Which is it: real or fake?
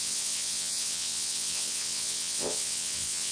fake